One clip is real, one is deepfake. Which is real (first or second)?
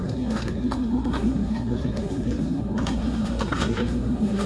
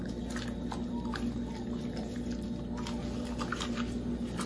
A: second